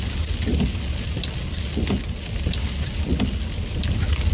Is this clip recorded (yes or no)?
yes